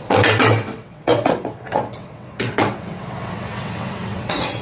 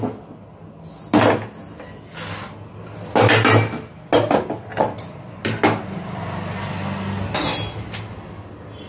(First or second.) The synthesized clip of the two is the first